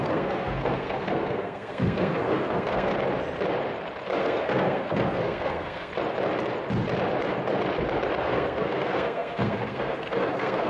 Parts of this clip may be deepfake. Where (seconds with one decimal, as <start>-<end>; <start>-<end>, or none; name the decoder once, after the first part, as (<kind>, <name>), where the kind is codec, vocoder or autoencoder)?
0.0-2.9 (codec, SNAC); 4.2-5.9; 8.2-10.7